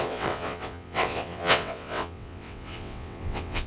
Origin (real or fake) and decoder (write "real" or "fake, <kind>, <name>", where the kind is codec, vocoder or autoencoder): fake, vocoder, WaveNeXt